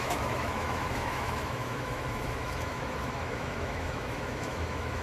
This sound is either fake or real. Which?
fake